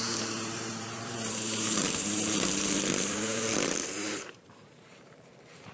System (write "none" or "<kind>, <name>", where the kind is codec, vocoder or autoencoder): vocoder, BigVGAN v2